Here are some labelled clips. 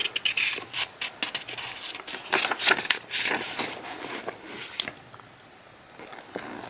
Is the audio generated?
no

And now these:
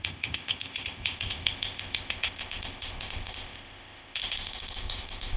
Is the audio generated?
yes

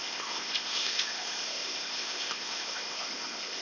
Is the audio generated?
yes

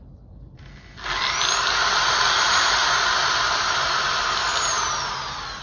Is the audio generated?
no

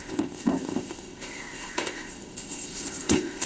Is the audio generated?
yes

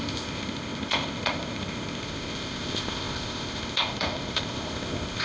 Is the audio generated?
yes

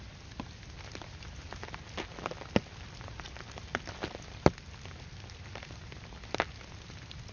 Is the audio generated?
no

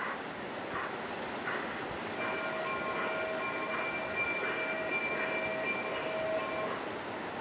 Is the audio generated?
no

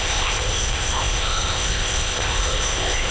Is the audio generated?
yes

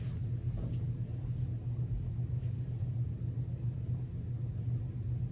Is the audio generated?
no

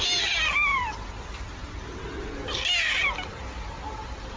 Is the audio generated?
no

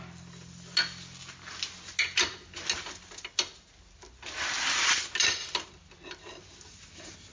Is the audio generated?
no